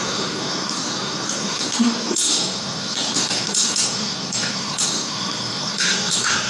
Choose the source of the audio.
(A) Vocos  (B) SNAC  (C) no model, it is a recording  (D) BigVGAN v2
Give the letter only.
B